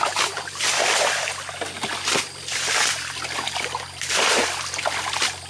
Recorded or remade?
recorded